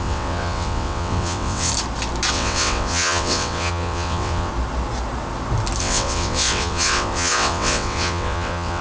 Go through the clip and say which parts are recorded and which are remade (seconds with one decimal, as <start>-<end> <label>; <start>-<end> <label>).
0.0-1.7 remade; 1.7-2.3 recorded; 2.3-4.5 remade; 4.5-5.8 recorded; 5.8-8.8 remade